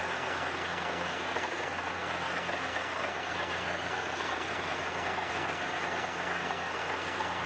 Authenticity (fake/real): fake